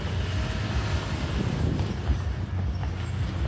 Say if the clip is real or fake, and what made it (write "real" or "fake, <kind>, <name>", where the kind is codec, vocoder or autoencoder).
real